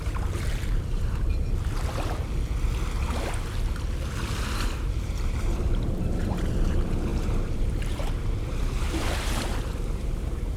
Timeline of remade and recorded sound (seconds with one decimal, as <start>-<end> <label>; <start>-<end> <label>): 0.0-1.3 remade; 1.3-4.8 recorded; 4.8-10.6 remade